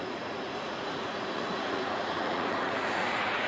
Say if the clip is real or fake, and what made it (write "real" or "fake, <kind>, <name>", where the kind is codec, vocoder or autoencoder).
fake, vocoder, Vocos